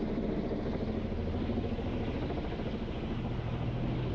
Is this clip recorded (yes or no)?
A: yes